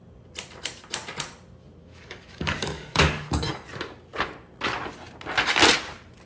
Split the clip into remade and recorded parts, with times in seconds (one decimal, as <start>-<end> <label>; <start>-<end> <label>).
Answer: 0.0-1.8 recorded; 1.8-3.5 remade; 3.5-6.3 recorded